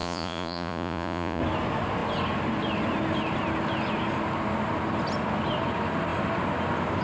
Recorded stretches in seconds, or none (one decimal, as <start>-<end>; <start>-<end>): 1.4-7.0